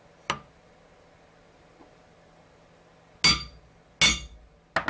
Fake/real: real